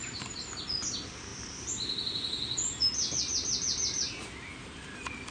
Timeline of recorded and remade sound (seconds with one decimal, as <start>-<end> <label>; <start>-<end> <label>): 0.0-5.3 recorded